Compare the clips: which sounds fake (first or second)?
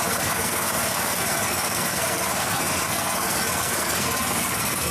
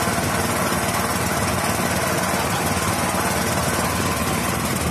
first